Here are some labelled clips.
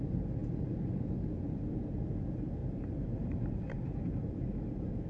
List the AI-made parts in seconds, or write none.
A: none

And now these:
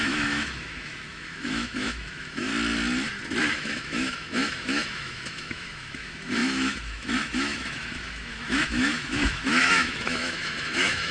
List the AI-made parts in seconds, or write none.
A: 0.0-2.5 (autoencoder, DAC-VAE); 3.4-11.1

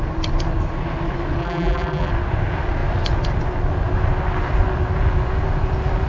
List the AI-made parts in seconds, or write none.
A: 1.4-2.1 (vocoder, BigVGAN v2)

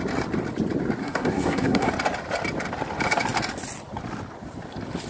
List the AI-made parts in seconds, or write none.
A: 1.0-1.9 (codec, SNAC)